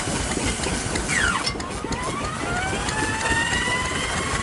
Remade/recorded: recorded